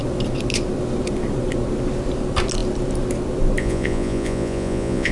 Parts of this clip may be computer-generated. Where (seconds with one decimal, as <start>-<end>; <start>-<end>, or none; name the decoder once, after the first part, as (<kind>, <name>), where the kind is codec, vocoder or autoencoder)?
3.6-5.1 (vocoder, Vocos)